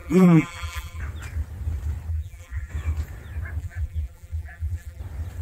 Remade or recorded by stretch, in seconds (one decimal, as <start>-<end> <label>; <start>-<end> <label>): 0.0-1.0 remade; 1.0-2.1 recorded; 2.1-2.7 remade; 2.7-3.6 recorded; 3.6-5.0 remade; 5.0-5.4 recorded